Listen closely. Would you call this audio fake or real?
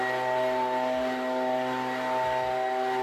real